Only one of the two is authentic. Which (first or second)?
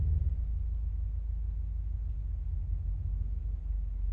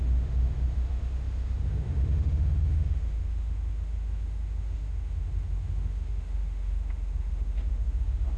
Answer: first